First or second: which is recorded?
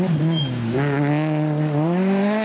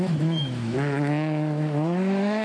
first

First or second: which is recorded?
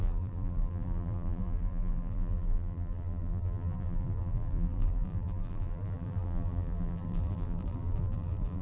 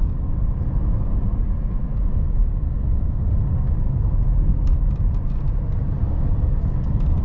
second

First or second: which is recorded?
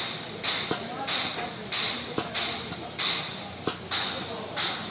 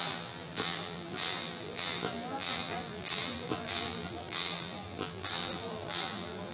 first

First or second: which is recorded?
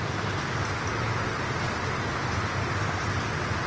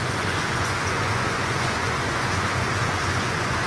first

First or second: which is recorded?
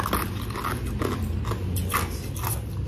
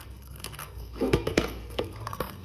first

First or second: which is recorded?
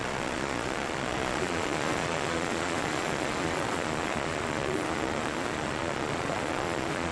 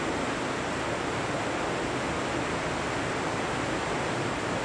second